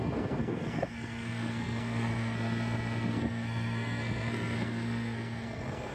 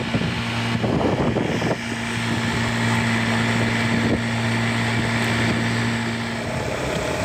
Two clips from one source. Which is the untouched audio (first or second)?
second